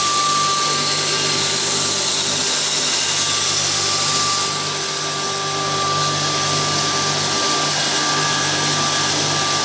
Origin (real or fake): real